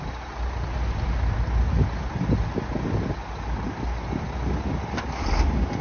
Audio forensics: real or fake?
real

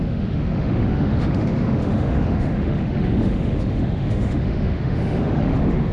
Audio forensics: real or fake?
fake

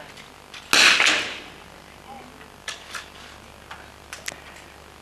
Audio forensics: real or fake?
real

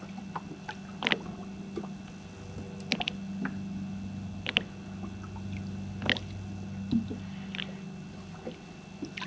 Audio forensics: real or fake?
real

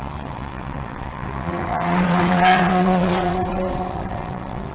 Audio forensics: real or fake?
fake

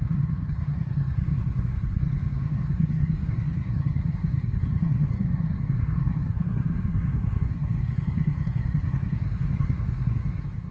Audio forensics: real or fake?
fake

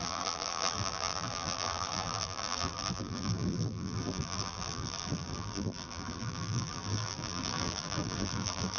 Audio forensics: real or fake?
fake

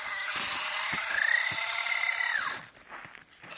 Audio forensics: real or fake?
real